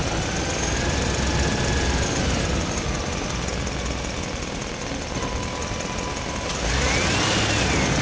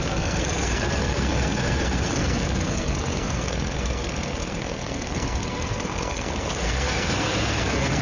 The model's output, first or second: second